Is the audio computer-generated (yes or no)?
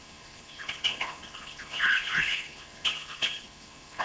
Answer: yes